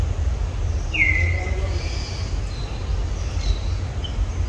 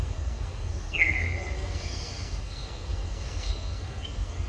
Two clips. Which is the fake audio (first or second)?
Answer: second